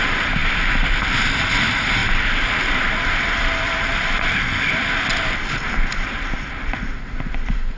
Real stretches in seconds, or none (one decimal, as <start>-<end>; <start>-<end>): 0.0-7.8